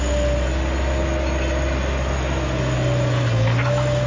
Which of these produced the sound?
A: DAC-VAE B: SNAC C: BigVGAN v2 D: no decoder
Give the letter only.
D